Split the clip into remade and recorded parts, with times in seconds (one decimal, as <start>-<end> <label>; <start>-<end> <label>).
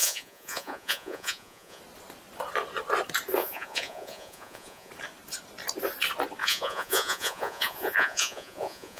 0.0-1.8 remade; 1.8-3.4 recorded; 3.4-4.9 remade; 4.9-6.4 recorded; 6.4-9.0 remade